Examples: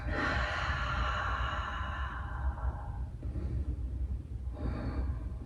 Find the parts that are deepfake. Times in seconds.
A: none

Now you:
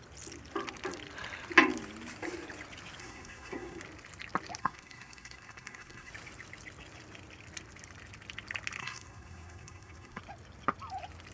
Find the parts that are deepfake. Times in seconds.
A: 3.0-3.8 (codec, SNAC); 4.6-6.1; 8.8-10.2

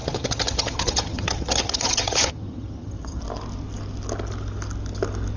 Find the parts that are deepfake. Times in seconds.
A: 0.0-3.2 (vocoder, HiFi-GAN)

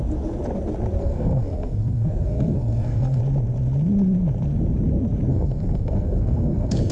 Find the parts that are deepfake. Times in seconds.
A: 1.0-3.2 (codec, SNAC); 5.3-6.9

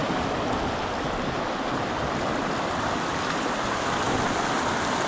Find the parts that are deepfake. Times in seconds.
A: none